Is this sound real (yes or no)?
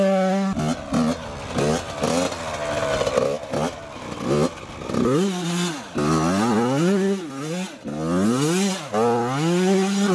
yes